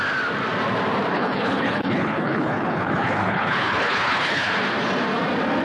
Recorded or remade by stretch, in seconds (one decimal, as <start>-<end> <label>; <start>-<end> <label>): 0.0-1.1 recorded; 1.1-4.5 remade; 4.5-5.6 recorded